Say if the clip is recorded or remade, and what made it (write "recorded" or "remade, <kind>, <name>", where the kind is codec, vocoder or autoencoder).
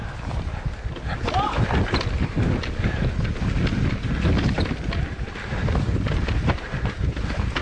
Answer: recorded